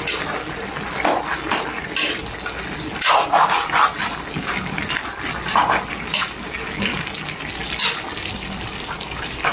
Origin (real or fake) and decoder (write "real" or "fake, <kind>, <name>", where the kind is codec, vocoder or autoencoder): real